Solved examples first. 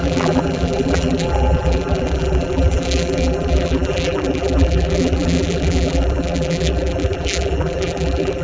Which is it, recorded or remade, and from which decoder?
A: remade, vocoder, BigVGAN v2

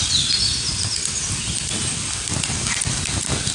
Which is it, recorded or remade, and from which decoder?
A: recorded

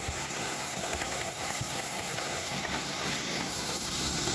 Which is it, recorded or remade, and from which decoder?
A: remade, codec, SNAC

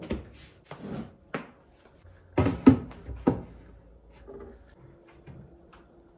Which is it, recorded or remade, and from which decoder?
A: recorded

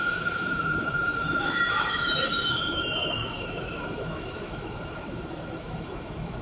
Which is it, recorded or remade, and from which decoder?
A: remade, autoencoder, DAC-VAE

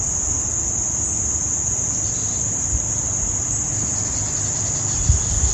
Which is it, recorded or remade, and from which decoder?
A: recorded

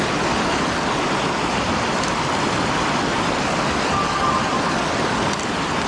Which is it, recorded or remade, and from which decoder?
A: recorded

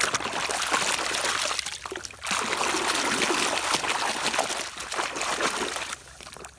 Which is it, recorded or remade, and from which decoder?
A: recorded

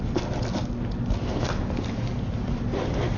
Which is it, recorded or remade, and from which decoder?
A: recorded